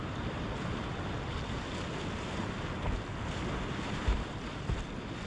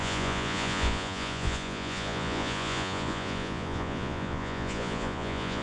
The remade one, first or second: second